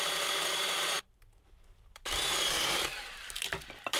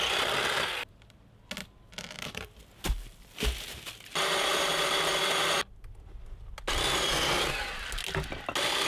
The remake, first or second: first